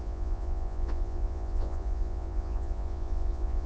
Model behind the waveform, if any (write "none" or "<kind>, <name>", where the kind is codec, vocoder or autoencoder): vocoder, Vocos